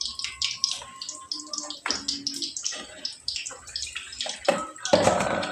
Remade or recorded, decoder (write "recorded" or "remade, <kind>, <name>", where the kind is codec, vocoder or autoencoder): recorded